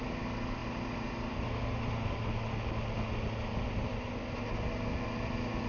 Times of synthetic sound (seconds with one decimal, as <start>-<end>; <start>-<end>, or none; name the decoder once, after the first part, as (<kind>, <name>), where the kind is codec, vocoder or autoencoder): none